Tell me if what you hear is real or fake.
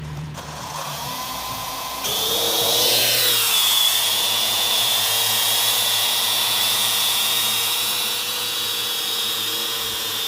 fake